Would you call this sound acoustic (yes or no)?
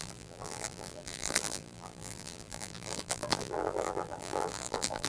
no